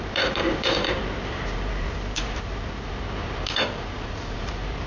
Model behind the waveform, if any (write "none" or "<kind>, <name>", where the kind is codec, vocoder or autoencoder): vocoder, BigVGAN v2